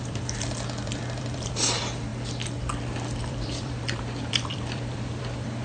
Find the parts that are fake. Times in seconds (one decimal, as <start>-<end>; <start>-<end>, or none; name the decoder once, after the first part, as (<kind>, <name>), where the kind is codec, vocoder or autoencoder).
0.0-2.1 (vocoder, BigVGAN v2); 3.2-5.6